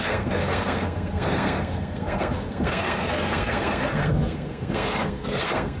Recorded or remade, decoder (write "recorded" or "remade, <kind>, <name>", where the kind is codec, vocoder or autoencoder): remade, codec, SNAC